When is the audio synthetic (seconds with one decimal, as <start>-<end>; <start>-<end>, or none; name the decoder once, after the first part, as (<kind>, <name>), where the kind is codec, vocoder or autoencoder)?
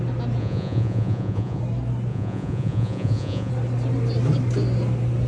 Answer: 0.4-1.6 (vocoder, Vocos); 2.1-3.5